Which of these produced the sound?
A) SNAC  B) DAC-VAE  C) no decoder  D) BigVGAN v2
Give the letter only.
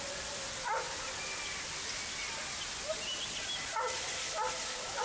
C